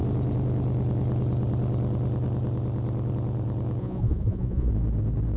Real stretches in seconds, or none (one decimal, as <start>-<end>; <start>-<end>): 0.0-3.8; 4.7-5.4